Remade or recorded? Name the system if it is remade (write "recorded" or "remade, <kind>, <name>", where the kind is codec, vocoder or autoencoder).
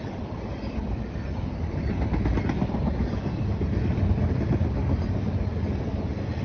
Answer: remade, vocoder, BigVGAN v2